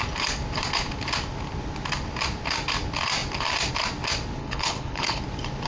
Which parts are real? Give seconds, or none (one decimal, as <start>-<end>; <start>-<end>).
0.0-4.4; 5.2-5.7